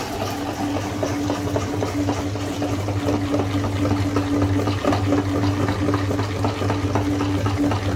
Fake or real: real